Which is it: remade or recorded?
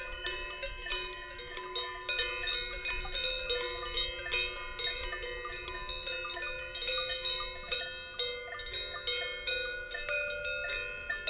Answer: recorded